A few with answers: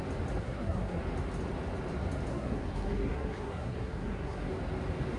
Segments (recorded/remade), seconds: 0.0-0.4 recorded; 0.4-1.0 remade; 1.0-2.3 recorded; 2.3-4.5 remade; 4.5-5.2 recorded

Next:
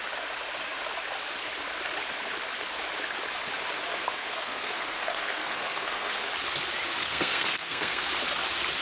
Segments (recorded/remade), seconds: 0.0-3.9 recorded; 3.9-6.3 remade; 6.3-7.0 recorded; 7.0-8.1 remade; 8.1-8.8 recorded